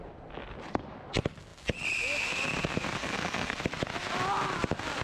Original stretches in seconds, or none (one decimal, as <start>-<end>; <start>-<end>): 0.0-3.0; 3.6-5.0